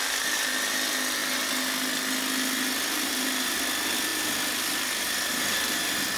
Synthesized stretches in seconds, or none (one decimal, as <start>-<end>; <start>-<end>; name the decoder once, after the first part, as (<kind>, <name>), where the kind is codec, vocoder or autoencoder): none